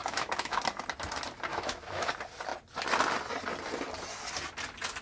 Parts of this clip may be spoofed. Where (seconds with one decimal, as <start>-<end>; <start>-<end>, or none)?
0.0-0.6; 1.5-2.1